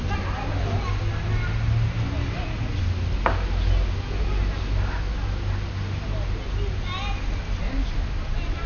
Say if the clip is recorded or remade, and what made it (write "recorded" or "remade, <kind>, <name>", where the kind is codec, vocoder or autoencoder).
recorded